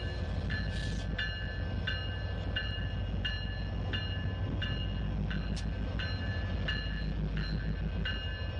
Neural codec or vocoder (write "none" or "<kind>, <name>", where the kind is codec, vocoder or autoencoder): none